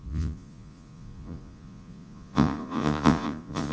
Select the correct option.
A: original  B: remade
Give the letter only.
B